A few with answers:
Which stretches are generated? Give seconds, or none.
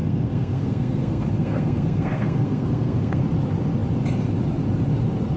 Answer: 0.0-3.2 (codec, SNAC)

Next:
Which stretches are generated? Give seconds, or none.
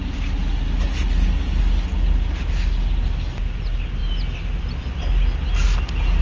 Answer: none